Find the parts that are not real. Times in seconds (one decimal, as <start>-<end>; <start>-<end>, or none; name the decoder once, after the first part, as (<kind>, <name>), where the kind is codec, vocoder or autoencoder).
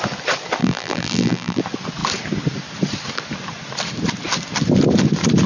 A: 0.6-1.6 (vocoder, BigVGAN v2)